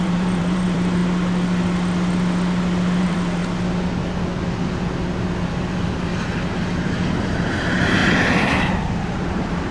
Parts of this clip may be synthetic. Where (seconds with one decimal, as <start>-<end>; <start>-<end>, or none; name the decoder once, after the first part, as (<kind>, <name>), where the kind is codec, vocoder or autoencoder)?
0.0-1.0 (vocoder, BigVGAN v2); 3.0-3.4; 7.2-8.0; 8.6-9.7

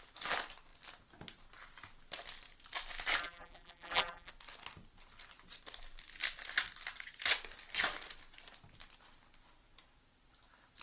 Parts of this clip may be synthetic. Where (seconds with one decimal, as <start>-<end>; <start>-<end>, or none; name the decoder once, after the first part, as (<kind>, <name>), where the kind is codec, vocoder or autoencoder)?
3.2-4.3 (vocoder, BigVGAN v2)

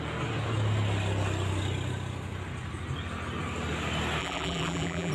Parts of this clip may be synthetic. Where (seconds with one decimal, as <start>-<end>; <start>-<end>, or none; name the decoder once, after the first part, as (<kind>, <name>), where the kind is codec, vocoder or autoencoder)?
4.2-5.1 (vocoder, BigVGAN v2)